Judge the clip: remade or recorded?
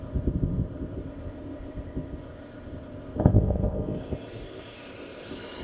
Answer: remade